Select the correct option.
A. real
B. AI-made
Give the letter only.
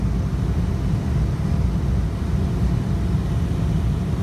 A